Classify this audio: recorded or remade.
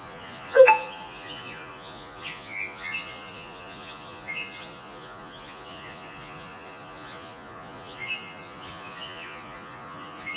remade